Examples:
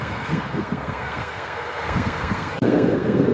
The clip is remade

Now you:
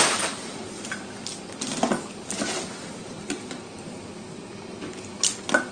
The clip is recorded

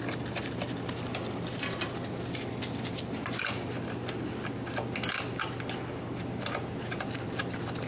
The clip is recorded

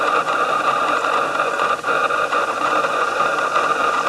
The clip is remade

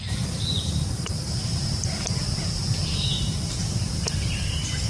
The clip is remade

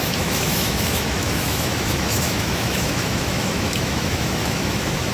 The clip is remade